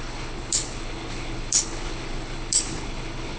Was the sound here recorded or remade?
remade